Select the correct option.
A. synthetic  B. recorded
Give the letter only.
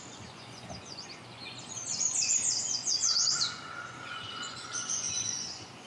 A